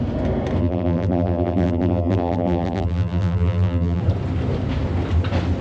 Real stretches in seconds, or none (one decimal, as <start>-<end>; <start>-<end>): 0.0-0.6; 4.0-5.6